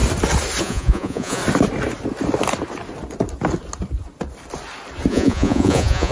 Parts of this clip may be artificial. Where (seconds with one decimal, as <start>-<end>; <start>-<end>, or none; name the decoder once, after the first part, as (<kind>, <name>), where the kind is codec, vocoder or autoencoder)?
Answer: 0.6-1.4 (vocoder, Vocos); 5.1-6.1